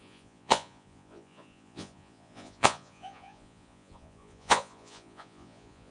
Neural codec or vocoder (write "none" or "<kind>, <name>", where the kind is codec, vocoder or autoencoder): vocoder, Vocos